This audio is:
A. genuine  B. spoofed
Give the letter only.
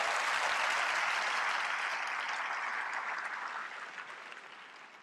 A